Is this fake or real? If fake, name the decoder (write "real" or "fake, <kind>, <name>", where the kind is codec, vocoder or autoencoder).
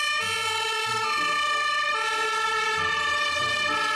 fake, vocoder, BigVGAN v2